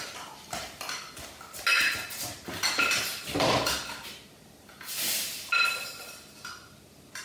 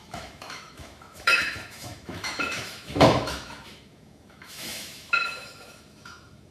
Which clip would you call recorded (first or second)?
first